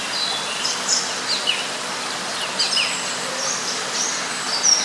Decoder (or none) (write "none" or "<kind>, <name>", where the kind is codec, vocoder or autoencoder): none